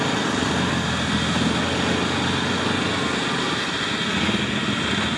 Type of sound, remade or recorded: recorded